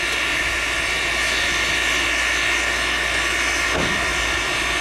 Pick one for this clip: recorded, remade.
recorded